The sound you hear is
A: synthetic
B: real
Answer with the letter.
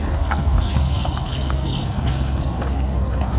A